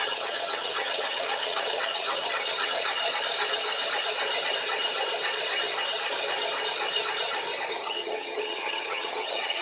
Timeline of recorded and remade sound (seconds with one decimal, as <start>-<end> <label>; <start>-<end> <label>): 0.0-2.9 remade; 2.9-7.7 recorded; 7.7-9.6 remade